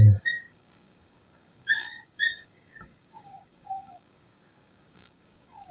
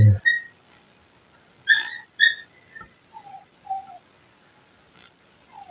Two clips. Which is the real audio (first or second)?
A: second